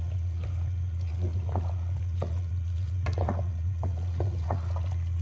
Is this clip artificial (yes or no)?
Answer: yes